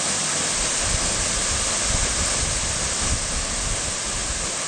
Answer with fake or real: real